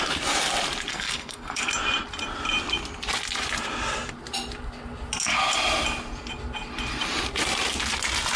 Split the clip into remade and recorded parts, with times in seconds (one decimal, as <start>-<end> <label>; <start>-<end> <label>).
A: 0.0-0.9 recorded; 0.9-1.7 remade; 1.7-8.4 recorded